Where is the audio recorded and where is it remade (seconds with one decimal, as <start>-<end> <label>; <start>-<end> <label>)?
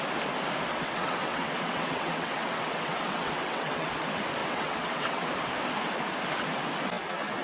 0.0-0.7 recorded; 0.7-3.9 remade; 3.9-4.4 recorded; 4.4-5.3 remade; 5.3-7.4 recorded